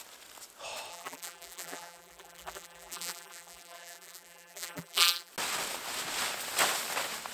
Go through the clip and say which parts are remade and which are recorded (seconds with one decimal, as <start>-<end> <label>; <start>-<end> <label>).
0.0-0.9 recorded; 0.9-5.3 remade; 5.3-7.3 recorded